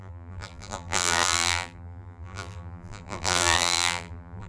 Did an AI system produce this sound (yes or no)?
yes